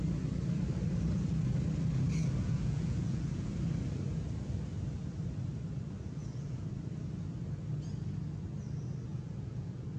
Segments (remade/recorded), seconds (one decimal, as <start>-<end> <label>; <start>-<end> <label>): 0.0-2.2 recorded; 2.2-3.5 remade; 3.5-6.2 recorded; 6.2-6.7 remade; 6.7-9.1 recorded; 9.1-10.0 remade